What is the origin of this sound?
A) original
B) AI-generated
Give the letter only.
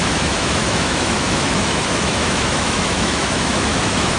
B